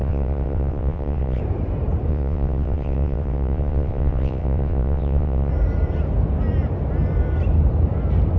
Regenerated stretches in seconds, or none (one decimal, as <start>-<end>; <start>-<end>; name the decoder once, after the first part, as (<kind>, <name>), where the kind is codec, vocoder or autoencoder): 0.0-1.4 (vocoder, WaveNeXt); 2.1-5.5